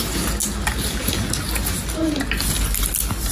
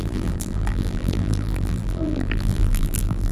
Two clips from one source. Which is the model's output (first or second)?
second